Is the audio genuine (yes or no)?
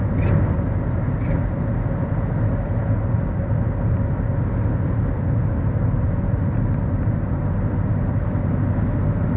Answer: yes